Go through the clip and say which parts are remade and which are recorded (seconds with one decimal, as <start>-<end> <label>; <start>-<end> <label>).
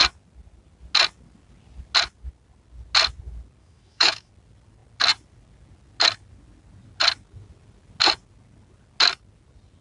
0.0-3.6 recorded; 3.6-4.3 remade; 4.3-9.8 recorded